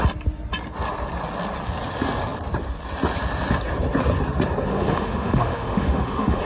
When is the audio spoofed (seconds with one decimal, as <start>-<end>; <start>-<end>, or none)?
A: 4.7-6.4